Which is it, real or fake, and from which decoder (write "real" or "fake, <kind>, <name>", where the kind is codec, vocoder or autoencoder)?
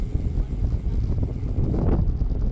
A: real